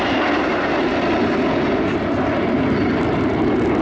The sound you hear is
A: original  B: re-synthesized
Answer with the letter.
A